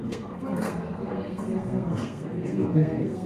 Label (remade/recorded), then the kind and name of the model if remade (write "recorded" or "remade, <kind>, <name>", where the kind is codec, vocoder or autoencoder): remade, codec, SNAC